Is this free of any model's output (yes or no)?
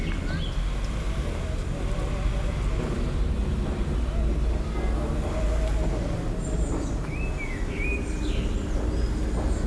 yes